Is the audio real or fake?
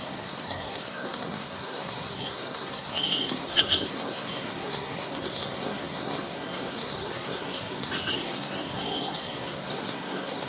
fake